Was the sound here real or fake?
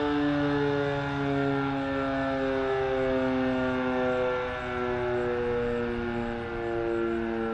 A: real